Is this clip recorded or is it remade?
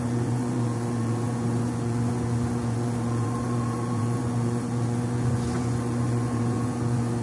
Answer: remade